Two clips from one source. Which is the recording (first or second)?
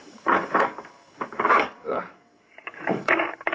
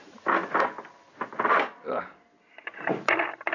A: second